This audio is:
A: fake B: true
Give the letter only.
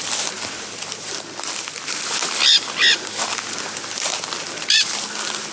A